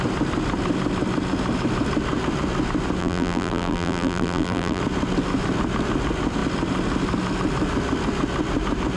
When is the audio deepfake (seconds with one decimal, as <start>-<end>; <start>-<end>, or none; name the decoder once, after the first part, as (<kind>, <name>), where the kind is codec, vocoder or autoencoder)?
3.0-4.8 (vocoder, BigVGAN v2)